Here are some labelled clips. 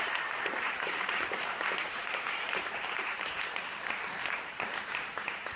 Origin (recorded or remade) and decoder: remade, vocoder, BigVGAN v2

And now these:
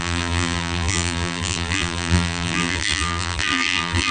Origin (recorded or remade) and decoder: remade, vocoder, BigVGAN v2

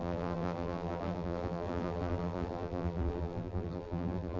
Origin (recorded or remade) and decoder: remade, vocoder, BigVGAN v2